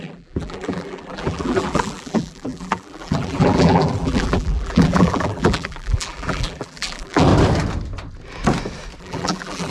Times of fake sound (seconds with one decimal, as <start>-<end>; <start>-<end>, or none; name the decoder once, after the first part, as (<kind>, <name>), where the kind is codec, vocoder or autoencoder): 0.0-7.3 (vocoder, BigVGAN v2); 9.0-9.7